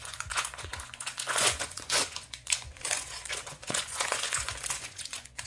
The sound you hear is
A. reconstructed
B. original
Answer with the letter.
A